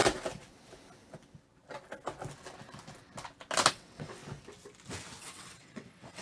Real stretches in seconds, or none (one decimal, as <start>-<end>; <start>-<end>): 0.0-3.7; 4.2-5.2